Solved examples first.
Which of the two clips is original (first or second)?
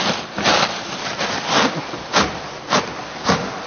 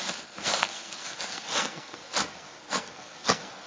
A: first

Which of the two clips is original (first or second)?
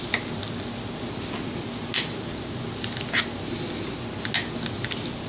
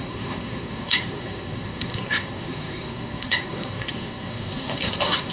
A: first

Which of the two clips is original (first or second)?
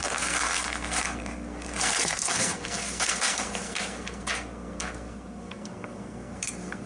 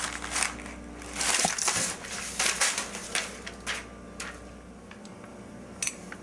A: second